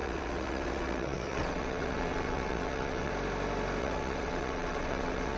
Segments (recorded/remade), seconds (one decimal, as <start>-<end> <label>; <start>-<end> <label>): 0.0-3.1 remade; 3.1-3.8 recorded; 3.8-5.4 remade